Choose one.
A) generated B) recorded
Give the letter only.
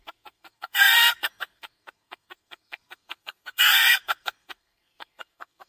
A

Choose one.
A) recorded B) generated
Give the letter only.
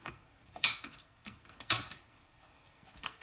B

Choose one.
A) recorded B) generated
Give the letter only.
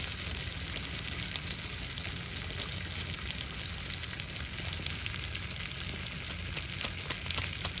A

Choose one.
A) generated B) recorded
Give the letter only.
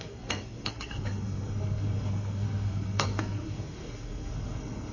A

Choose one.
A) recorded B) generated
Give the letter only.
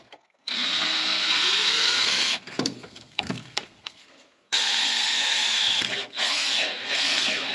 B